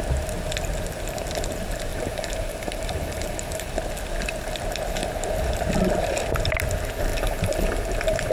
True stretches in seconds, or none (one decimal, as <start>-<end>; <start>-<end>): 0.0-1.9; 3.7-7.1